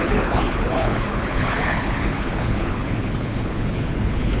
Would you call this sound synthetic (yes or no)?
yes